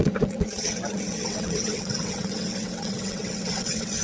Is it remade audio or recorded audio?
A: remade